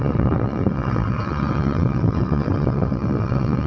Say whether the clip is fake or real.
fake